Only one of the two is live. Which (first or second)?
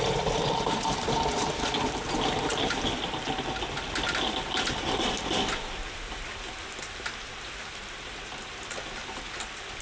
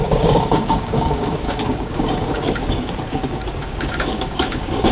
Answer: first